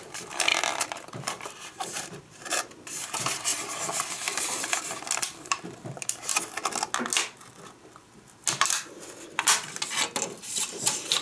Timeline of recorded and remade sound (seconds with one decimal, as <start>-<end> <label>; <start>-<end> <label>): 0.0-3.5 remade; 3.5-5.4 recorded; 5.4-6.3 remade; 6.3-10.4 recorded; 10.4-11.2 remade